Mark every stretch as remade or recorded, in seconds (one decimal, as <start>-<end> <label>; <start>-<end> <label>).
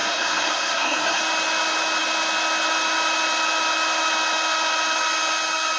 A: 0.0-1.2 remade; 1.2-5.8 recorded